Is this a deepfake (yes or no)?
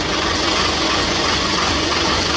yes